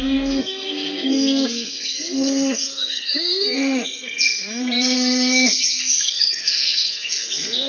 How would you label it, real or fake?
fake